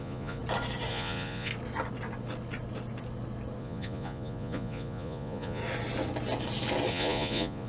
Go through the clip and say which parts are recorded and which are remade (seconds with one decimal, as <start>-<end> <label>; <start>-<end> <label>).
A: 0.0-0.4 remade; 0.4-0.9 recorded; 0.9-1.5 remade; 1.5-3.6 recorded; 3.6-5.6 remade; 5.6-6.9 recorded; 6.9-7.7 remade